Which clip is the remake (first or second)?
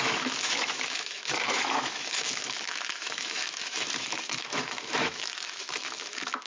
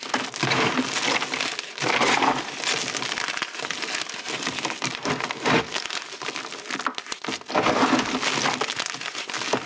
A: first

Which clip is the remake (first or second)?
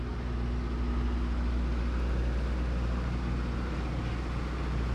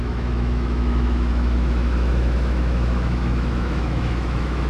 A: second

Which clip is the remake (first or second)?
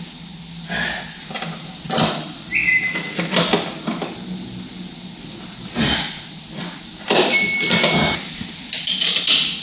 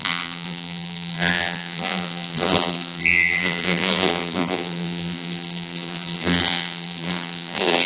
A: second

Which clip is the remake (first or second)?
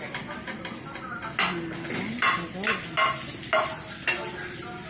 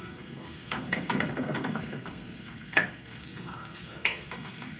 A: second